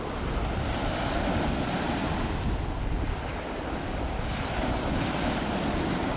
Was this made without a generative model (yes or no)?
yes